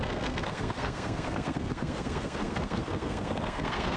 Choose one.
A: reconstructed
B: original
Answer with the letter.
A